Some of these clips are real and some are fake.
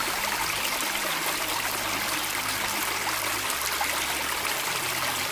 real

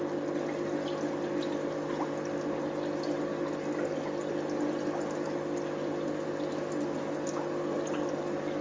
real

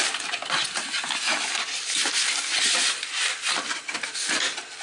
real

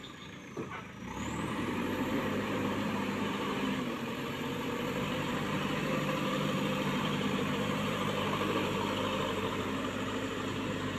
fake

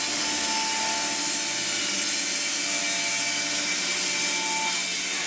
real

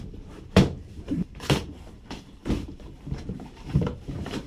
fake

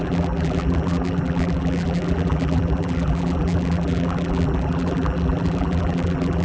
fake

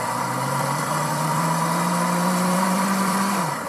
fake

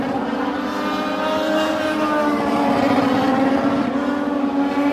real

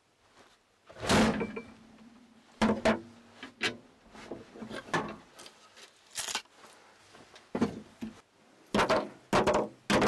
real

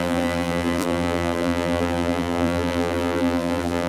fake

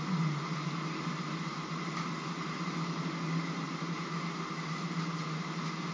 real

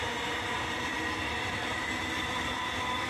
real